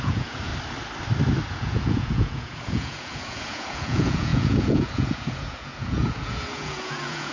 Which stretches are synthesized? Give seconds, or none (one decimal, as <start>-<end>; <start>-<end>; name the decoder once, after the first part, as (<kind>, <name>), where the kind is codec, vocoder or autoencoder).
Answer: 0.0-0.5 (vocoder, Vocos); 1.5-7.3